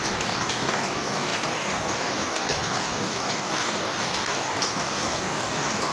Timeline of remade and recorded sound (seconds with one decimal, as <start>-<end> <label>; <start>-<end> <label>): 0.0-5.9 remade